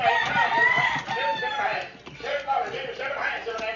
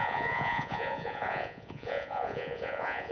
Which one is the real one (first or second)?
first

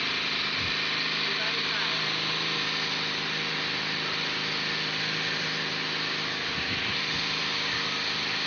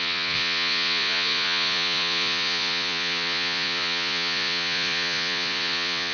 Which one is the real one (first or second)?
first